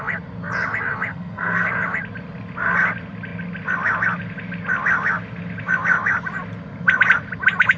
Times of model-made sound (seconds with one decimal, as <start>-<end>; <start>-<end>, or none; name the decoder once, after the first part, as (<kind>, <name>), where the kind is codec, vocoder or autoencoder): 1.1-1.7 (codec, SNAC)